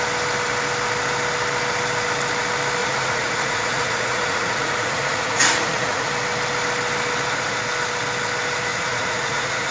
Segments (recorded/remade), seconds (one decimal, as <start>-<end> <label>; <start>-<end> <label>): 0.0-2.8 recorded; 2.8-6.1 remade; 6.1-8.7 recorded; 8.7-9.7 remade